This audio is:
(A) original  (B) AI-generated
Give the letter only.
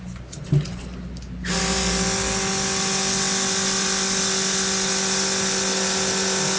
A